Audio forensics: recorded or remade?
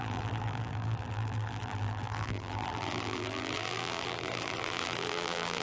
remade